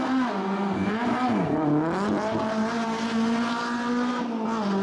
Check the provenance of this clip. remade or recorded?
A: recorded